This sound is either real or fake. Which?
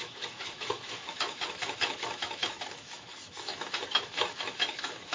fake